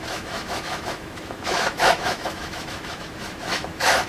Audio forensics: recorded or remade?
remade